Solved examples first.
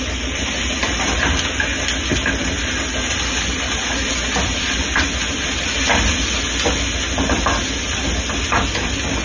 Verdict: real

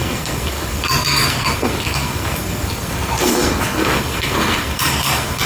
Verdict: fake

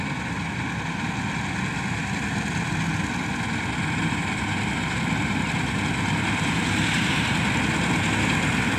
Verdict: real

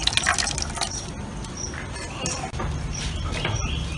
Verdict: real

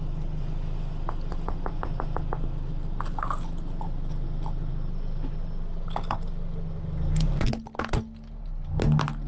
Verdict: real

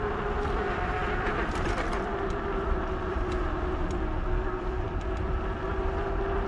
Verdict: fake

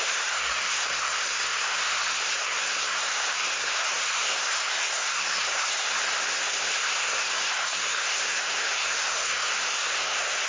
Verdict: fake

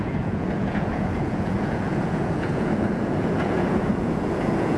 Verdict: fake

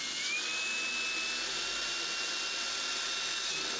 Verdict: real